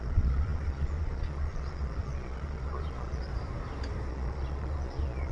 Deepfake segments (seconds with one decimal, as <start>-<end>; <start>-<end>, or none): 0.0-3.3; 4.1-5.3